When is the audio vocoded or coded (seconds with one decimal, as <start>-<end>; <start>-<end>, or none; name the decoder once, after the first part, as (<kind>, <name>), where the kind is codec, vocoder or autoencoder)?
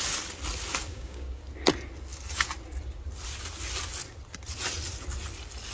0.9-1.4 (codec, DAC)